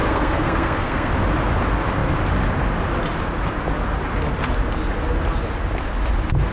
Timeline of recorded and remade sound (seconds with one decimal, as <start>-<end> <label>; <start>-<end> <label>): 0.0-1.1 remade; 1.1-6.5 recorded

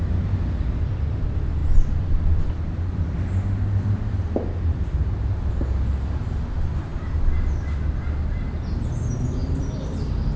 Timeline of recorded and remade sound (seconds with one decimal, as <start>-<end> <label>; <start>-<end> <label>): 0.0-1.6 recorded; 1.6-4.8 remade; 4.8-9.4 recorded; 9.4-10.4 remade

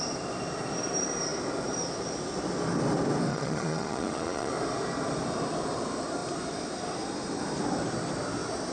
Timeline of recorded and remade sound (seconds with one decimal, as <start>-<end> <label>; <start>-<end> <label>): 0.0-3.3 recorded; 3.3-4.5 remade; 4.5-8.7 recorded

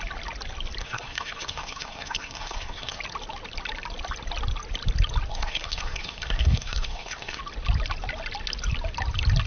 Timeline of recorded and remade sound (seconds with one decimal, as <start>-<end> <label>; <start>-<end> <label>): 0.0-0.8 recorded; 0.8-3.0 remade; 3.0-5.3 recorded; 5.3-7.4 remade; 7.4-9.5 recorded